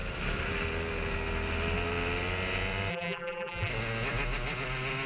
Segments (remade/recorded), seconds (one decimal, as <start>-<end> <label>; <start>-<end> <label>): 0.0-2.9 recorded; 2.9-3.7 remade; 3.7-5.1 recorded